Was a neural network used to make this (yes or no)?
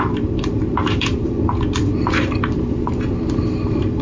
yes